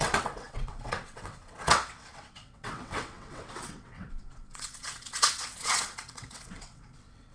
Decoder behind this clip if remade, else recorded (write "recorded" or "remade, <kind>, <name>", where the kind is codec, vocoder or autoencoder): remade, vocoder, WaveNeXt